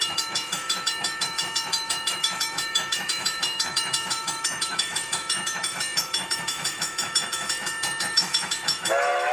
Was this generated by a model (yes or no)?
yes